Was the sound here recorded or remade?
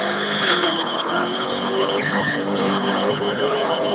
remade